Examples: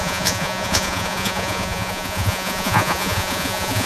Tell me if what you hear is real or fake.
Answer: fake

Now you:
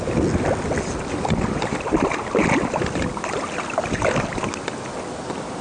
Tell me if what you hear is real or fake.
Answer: real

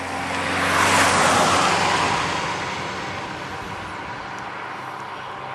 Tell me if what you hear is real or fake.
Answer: real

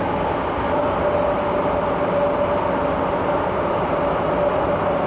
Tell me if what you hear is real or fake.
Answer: real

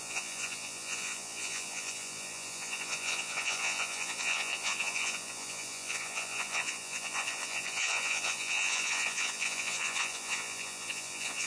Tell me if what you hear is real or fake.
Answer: fake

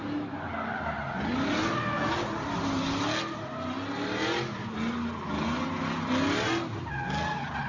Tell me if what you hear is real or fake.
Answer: real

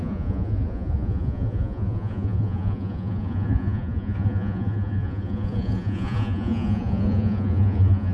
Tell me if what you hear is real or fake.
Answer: fake